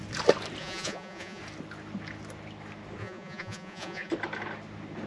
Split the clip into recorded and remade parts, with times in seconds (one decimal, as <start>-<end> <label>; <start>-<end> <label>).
0.0-0.6 recorded; 0.6-1.4 remade; 1.4-3.0 recorded; 3.0-4.1 remade; 4.1-5.1 recorded